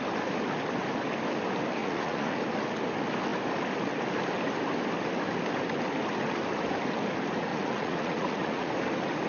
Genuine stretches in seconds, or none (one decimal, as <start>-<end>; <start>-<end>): 0.0-1.8; 2.4-7.5; 8.7-9.3